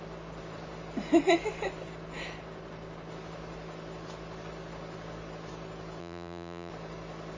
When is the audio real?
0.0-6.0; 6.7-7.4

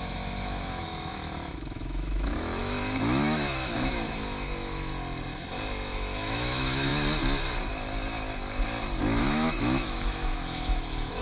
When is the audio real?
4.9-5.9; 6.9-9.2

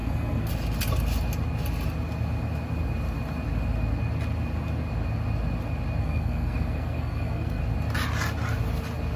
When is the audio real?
0.5-6.0; 7.6-9.2